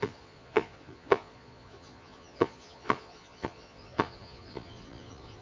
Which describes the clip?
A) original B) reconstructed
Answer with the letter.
B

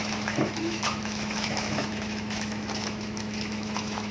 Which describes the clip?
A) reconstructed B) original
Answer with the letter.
A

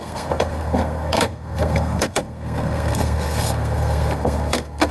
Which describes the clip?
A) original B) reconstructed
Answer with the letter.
B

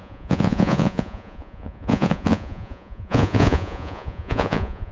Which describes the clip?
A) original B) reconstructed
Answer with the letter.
B